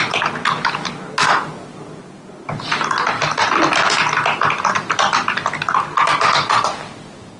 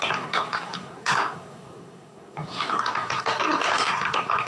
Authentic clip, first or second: first